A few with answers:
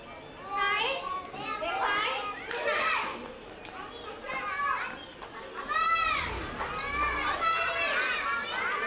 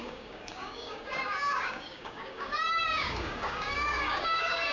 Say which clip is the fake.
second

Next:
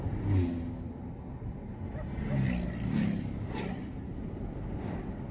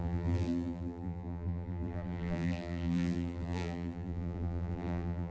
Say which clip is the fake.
second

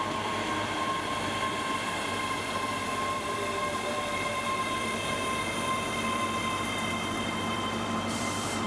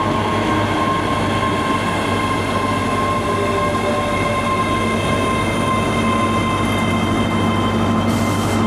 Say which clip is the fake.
first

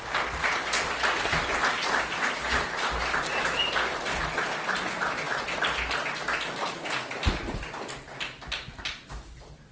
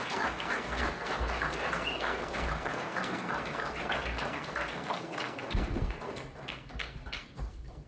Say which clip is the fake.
second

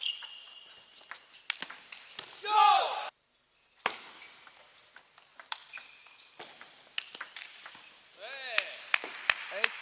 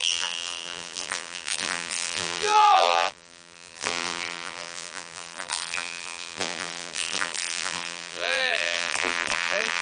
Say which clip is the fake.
second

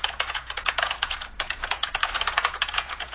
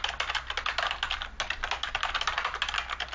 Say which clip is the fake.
first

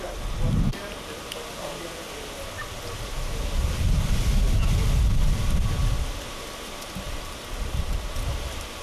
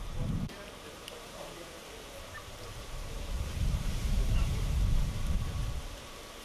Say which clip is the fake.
second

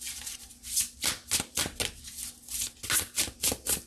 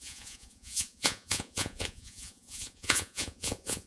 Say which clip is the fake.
second